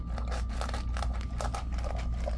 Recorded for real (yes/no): yes